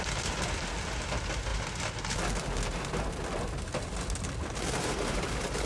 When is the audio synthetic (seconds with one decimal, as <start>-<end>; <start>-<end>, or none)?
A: none